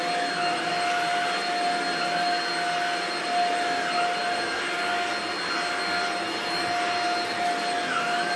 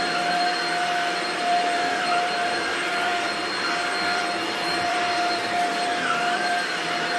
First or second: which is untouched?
first